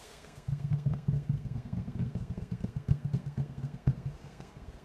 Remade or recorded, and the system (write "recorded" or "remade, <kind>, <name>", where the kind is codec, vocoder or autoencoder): remade, codec, SNAC